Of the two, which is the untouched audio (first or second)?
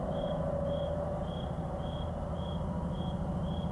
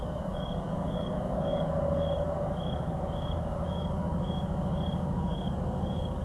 first